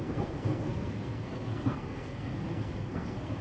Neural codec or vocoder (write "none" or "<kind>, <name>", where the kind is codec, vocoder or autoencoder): codec, SNAC